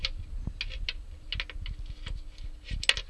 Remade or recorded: recorded